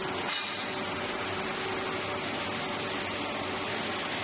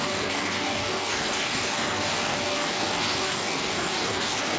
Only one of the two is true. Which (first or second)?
first